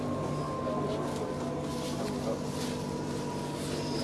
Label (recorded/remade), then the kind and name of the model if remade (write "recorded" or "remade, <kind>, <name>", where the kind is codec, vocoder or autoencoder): recorded